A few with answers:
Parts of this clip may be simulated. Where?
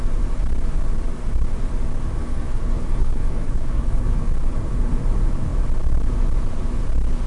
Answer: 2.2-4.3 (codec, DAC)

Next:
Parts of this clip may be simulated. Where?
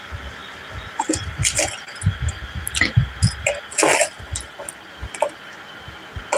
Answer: none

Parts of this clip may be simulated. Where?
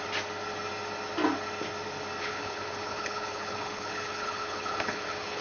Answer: 2.2-5.4 (codec, HILCodec)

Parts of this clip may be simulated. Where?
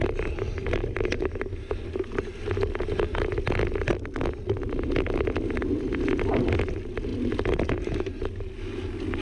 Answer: 0.8-2.2 (vocoder, BigVGAN v2)